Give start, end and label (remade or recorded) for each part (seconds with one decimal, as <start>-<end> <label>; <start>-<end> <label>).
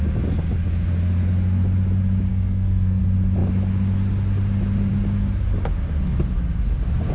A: 0.0-2.3 recorded; 2.3-3.0 remade; 3.0-7.1 recorded